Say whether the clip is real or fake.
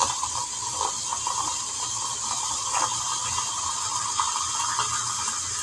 real